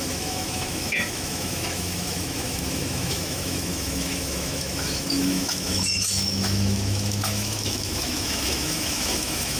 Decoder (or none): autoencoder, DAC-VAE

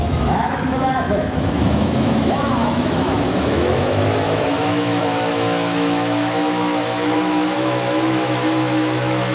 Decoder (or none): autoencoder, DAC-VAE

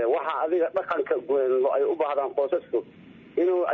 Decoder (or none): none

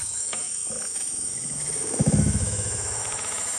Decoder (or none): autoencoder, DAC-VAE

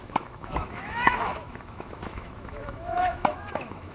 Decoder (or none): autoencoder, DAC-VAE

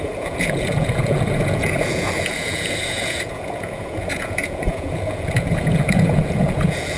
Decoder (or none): vocoder, Vocos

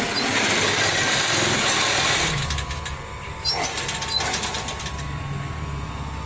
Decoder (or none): none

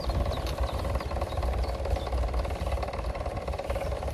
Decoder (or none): none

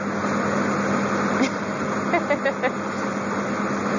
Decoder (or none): none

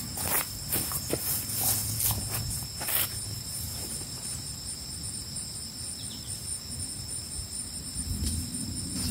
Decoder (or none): vocoder, BigVGAN v2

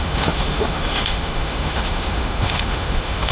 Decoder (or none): autoencoder, DAC-VAE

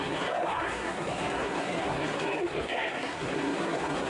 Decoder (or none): codec, SNAC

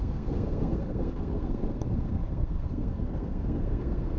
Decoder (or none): codec, SNAC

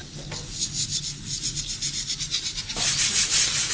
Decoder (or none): none